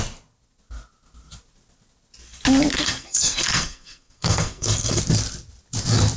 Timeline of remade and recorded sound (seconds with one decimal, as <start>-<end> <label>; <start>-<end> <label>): 0.0-2.7 recorded; 2.7-5.0 remade; 5.0-6.2 recorded